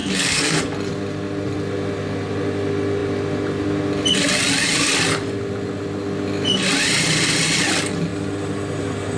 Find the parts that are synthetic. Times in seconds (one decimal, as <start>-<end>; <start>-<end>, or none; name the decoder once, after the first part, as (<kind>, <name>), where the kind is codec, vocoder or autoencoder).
0.0-0.6 (codec, SNAC)